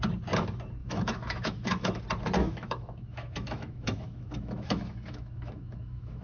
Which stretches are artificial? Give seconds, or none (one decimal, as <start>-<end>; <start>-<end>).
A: 0.8-2.0; 2.4-6.2